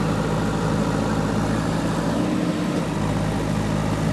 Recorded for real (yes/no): yes